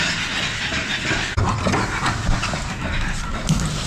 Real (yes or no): yes